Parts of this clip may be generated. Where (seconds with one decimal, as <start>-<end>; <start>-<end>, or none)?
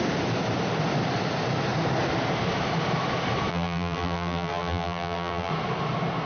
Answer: 3.5-5.5